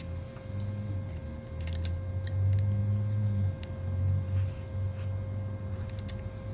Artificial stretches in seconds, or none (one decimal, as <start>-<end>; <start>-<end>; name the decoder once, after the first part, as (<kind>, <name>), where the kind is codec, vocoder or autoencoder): none